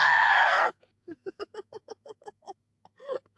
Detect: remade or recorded remade